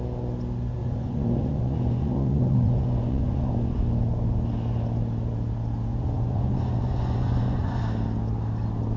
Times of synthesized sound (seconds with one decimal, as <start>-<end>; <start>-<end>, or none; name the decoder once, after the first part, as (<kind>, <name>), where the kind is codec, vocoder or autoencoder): 0.8-3.8 (vocoder, Vocos); 5.9-7.8